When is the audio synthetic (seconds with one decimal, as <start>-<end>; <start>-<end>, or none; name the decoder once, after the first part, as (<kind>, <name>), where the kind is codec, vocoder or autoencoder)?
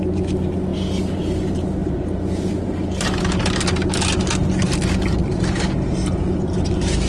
1.8-2.7 (vocoder, BigVGAN v2); 5.2-7.1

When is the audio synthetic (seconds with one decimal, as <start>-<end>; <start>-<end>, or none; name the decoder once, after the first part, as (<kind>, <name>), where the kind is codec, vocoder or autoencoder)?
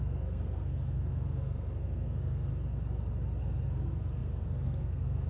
0.0-2.5 (codec, SNAC); 3.4-5.3